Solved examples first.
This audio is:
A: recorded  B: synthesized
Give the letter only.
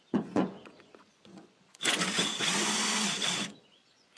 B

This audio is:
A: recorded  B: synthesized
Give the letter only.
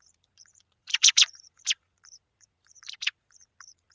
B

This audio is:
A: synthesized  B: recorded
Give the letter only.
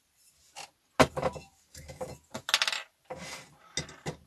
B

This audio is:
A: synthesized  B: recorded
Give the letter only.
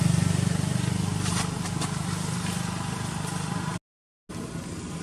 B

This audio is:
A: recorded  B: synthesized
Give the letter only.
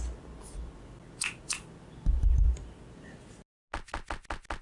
A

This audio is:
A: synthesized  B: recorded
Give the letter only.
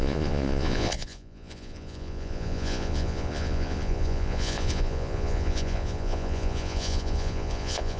A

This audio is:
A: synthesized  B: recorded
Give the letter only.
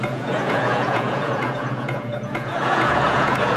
A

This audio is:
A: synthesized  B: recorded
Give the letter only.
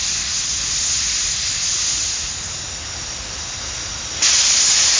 B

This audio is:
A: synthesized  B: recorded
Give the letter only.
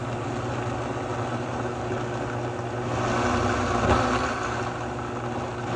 B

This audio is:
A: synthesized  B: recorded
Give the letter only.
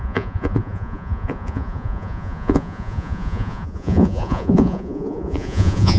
A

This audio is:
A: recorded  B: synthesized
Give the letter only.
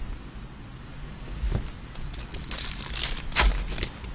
A